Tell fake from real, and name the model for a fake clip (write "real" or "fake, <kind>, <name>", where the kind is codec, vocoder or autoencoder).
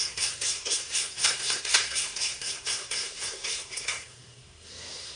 fake, codec, SNAC